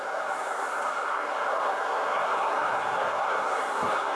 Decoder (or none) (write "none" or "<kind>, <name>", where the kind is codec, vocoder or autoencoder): codec, SNAC